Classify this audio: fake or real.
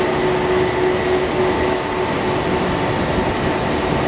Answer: real